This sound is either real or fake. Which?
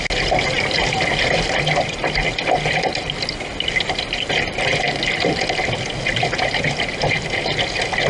real